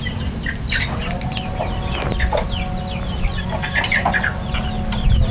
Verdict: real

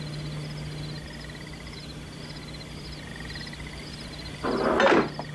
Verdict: real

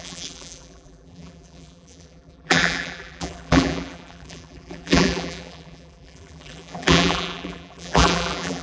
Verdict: fake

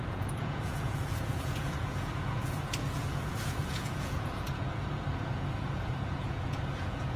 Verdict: fake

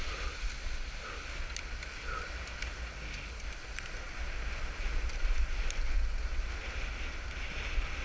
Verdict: real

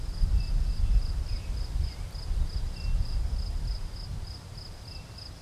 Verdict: real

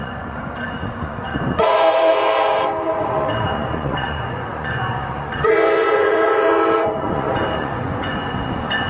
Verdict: fake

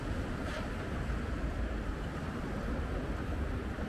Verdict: fake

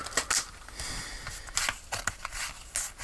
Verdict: real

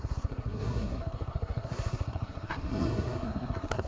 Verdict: fake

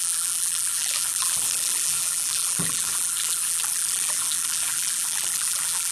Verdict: fake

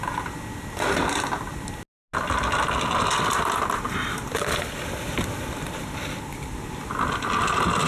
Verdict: real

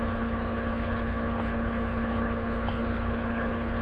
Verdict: fake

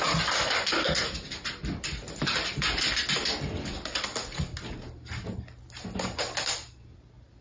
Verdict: real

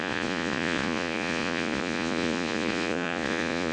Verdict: fake